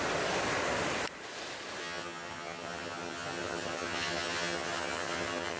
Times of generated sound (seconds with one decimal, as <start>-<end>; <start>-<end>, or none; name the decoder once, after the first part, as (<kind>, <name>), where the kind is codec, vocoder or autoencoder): 1.8-5.6 (vocoder, HiFi-GAN)